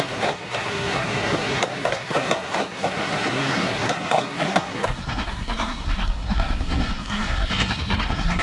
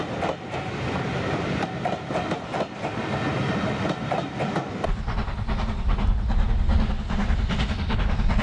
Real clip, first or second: second